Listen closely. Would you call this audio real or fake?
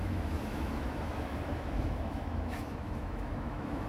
fake